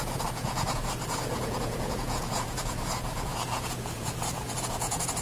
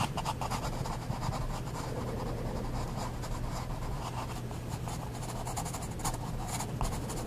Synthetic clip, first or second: first